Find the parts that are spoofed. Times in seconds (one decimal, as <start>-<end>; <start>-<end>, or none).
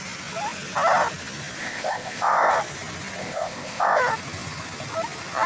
1.6-2.5; 3.2-4.0